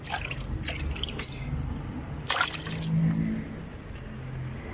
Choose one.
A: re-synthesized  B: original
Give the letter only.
B